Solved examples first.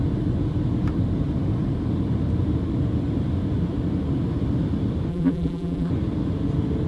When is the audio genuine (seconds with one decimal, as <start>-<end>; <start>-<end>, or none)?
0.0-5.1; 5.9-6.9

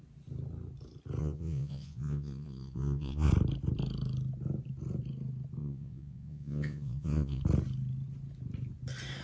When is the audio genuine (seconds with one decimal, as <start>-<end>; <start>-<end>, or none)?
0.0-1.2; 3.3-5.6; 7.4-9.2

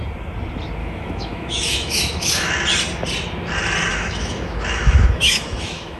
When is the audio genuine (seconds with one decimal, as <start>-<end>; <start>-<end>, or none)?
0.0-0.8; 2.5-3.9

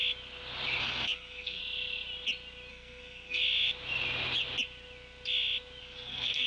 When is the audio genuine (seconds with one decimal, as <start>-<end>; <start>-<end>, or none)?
0.0-0.8; 1.6-2.7; 3.4-5.8

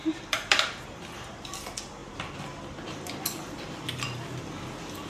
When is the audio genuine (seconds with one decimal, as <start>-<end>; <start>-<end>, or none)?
1.3-5.1